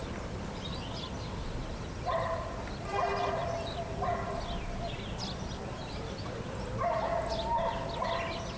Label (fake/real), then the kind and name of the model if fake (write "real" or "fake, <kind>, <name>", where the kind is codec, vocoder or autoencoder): real